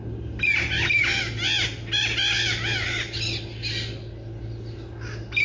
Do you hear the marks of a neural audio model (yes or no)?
no